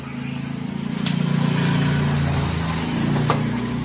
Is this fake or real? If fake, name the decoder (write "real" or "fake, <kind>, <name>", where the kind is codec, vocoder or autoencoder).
real